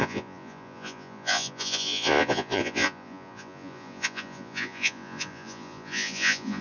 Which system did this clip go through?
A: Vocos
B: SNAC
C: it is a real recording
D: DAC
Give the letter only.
A